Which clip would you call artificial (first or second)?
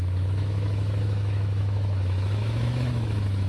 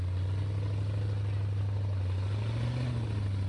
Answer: first